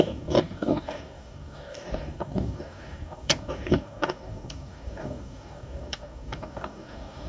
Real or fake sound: fake